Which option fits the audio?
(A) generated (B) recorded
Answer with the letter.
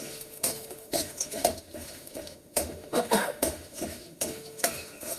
A